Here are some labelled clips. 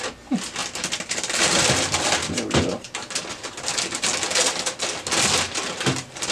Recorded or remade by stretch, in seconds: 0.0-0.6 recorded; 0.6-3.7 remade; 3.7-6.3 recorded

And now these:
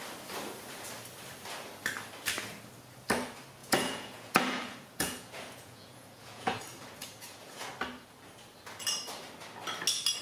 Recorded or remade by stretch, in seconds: 0.0-3.6 recorded; 3.6-6.6 remade; 6.6-7.0 recorded; 7.0-7.7 remade; 7.7-10.2 recorded

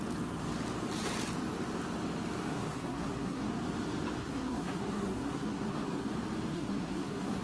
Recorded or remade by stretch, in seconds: 0.0-2.5 recorded; 2.5-3.5 remade; 3.5-4.2 recorded; 4.2-6.1 remade; 6.1-6.5 recorded; 6.5-7.4 remade

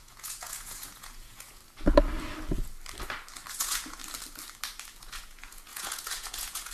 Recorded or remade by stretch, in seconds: 0.0-1.6 remade; 1.6-3.5 recorded; 3.5-4.0 remade; 4.0-5.0 recorded; 5.0-6.7 remade

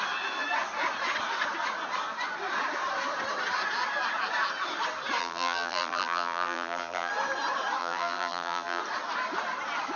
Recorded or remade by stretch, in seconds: 0.0-5.2 recorded; 5.2-7.1 remade; 7.1-7.8 recorded; 7.8-8.8 remade; 8.8-10.0 recorded

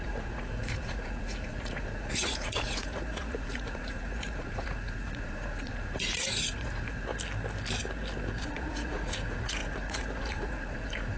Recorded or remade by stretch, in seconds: 0.0-7.1 remade; 7.1-8.4 recorded; 8.4-11.2 remade

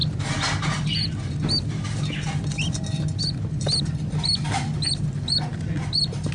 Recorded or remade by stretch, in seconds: 0.0-6.3 recorded

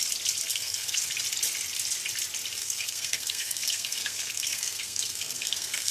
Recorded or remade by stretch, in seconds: 0.0-0.5 recorded; 0.5-1.1 remade; 1.1-2.6 recorded; 2.6-5.9 remade